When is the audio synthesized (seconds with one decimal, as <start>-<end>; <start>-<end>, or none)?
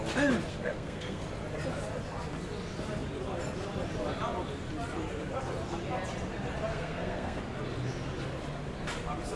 0.5-1.2; 6.7-7.4